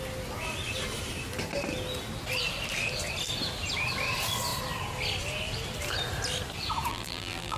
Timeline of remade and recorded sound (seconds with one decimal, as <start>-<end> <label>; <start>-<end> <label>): 0.0-6.9 recorded; 6.9-7.6 remade